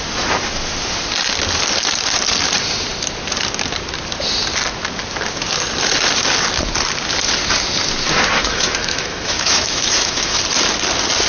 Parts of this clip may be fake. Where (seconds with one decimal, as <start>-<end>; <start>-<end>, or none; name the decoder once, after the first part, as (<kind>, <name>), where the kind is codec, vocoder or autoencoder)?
8.4-10.4 (autoencoder, DAC-VAE)